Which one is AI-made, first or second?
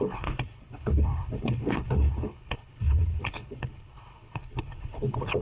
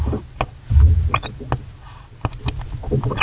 first